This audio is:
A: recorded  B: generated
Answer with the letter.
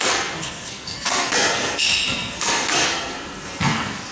B